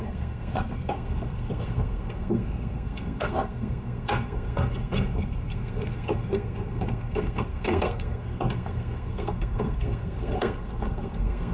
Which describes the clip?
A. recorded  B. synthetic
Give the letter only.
B